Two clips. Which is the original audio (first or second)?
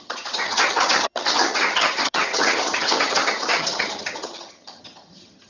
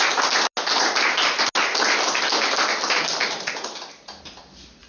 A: second